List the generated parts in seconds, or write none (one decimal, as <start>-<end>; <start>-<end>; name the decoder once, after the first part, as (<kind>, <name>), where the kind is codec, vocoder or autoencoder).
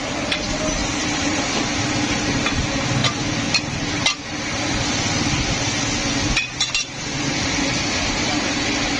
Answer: 0.8-1.7 (vocoder, BigVGAN v2)